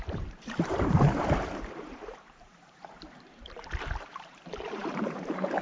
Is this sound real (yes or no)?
no